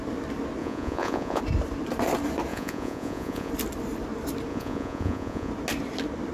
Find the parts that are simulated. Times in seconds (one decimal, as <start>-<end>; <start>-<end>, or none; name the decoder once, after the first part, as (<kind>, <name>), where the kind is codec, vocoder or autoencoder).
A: 0.6-1.4 (vocoder, Vocos); 2.5-3.5; 4.5-5.5